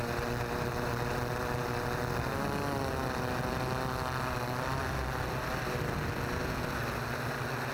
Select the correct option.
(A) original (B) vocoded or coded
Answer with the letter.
A